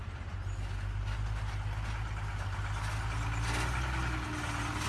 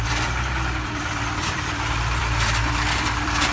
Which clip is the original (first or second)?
first